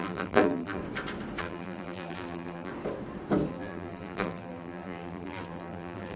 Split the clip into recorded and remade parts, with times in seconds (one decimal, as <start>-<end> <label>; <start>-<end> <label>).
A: 0.0-0.8 remade; 0.8-1.4 recorded; 1.4-2.7 remade; 2.7-3.5 recorded; 3.5-6.2 remade